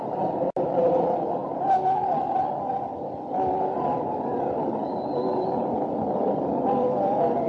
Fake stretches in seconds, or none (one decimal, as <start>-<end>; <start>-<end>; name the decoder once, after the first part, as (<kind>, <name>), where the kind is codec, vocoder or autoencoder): none